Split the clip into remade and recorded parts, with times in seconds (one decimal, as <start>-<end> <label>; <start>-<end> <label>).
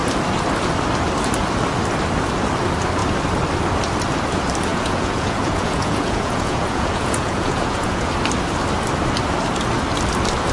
0.0-4.7 recorded; 4.7-8.1 remade; 8.1-10.5 recorded